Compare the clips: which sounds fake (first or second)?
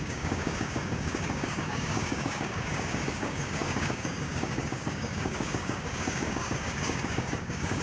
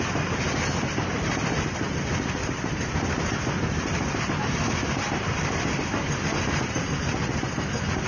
first